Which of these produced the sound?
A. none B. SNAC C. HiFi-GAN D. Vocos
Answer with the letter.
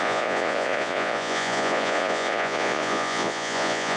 D